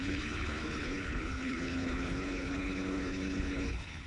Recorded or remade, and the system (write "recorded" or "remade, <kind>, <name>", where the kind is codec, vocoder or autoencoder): remade, codec, HILCodec